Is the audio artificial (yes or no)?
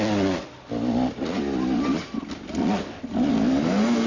no